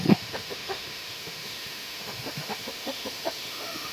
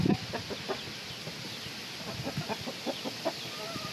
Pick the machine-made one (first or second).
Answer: first